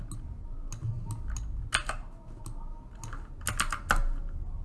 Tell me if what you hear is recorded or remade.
recorded